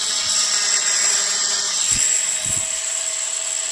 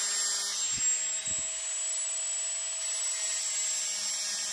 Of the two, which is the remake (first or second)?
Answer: first